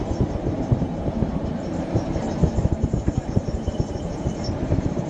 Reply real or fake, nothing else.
fake